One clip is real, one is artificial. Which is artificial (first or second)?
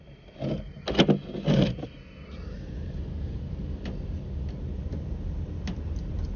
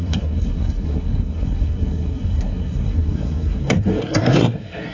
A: second